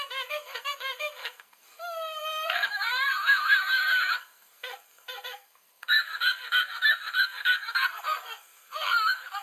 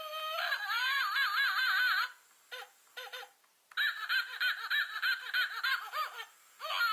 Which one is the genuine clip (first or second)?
second